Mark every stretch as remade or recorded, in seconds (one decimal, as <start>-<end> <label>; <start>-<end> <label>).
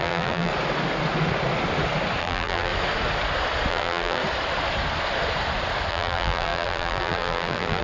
0.0-0.5 remade; 0.5-2.2 recorded; 2.2-2.7 remade; 2.7-3.7 recorded; 3.7-4.2 remade; 4.2-5.9 recorded; 5.9-7.8 remade